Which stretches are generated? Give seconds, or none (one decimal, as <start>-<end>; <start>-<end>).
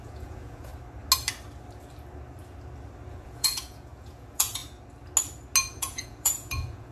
0.0-0.7; 3.1-4.6; 5.7-6.9